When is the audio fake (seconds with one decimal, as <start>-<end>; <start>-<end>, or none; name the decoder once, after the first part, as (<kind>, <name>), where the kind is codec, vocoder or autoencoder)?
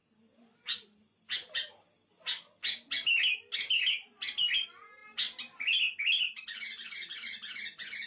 none